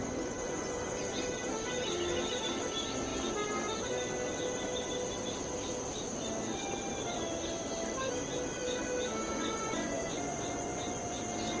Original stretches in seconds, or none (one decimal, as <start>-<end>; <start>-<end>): 0.9-9.3; 11.2-11.6